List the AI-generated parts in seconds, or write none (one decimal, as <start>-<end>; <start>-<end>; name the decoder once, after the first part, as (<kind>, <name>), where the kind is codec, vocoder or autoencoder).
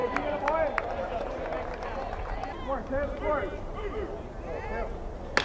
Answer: 0.0-3.2 (vocoder, BigVGAN v2)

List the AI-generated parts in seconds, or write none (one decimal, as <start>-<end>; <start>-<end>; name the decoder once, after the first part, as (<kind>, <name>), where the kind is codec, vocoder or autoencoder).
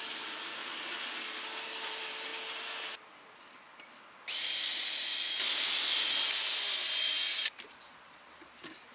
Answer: 0.0-0.6 (vocoder, BigVGAN v2); 1.6-2.3; 7.4-8.9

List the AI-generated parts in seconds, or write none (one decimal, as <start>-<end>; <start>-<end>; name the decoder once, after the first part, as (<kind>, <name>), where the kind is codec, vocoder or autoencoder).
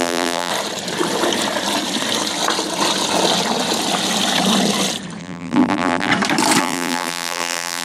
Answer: 0.0-0.5 (vocoder, BigVGAN v2); 5.2-6.1; 6.6-7.8